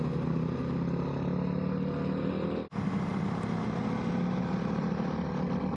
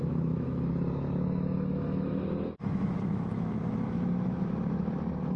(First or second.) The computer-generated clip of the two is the second